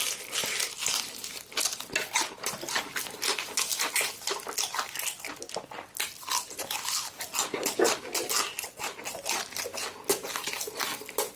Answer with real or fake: real